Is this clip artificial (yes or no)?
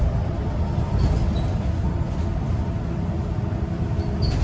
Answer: no